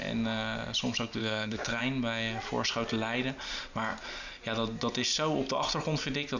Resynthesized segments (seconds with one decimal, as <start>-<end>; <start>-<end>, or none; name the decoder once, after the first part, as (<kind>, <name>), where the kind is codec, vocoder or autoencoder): 1.2-1.8 (autoencoder, DAC-VAE)